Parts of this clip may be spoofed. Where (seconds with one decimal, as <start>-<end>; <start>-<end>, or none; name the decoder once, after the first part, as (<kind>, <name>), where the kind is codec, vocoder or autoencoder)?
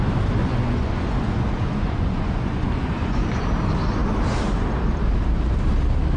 0.4-3.4 (vocoder, Vocos)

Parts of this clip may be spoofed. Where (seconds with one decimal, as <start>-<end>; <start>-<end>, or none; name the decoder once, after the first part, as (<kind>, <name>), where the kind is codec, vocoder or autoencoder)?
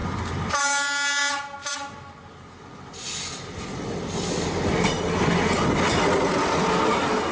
none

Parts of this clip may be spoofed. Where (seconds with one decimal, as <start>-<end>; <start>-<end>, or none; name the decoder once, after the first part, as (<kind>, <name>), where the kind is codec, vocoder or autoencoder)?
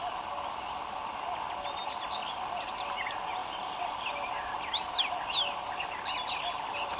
none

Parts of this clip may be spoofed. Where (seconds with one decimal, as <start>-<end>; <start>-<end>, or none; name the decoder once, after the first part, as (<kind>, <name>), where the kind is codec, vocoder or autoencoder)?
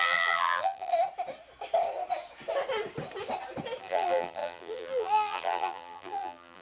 0.0-0.9 (vocoder, BigVGAN v2); 3.8-6.6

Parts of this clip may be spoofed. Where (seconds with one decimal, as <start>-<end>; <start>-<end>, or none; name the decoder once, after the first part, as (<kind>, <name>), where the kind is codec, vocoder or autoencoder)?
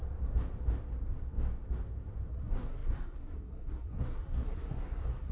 2.3-5.3 (codec, SNAC)